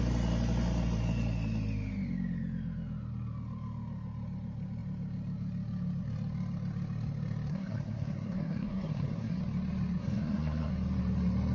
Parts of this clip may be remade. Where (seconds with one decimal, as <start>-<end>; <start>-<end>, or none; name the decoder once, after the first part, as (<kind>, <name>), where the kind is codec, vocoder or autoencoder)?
7.5-9.4 (codec, SNAC); 10.0-10.7

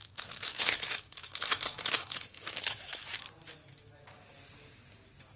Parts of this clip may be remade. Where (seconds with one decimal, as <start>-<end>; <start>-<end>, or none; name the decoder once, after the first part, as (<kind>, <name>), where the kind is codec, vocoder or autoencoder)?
0.0-3.2 (autoencoder, DAC-VAE)

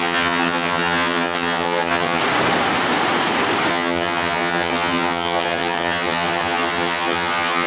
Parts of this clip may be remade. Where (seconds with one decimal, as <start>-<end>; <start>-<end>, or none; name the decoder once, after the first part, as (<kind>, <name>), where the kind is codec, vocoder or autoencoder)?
0.0-2.2 (vocoder, HiFi-GAN); 3.7-7.7

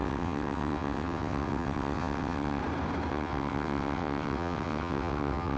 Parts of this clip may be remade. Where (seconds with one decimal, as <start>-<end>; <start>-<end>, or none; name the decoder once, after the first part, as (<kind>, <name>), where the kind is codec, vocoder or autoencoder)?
0.0-2.6 (vocoder, WaveNeXt); 3.1-5.6